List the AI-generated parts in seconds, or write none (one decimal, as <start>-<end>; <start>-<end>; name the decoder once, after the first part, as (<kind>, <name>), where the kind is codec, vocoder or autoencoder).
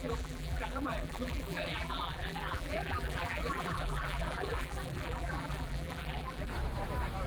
0.0-6.5 (vocoder, BigVGAN v2)